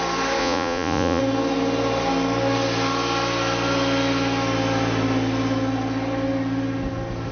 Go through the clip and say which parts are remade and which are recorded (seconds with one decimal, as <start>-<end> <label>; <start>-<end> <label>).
0.0-0.4 recorded; 0.4-1.2 remade; 1.2-7.3 recorded

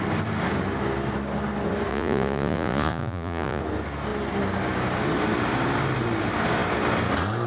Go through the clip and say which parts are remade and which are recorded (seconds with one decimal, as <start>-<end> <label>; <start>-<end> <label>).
0.0-1.9 recorded; 1.9-3.6 remade; 3.6-7.5 recorded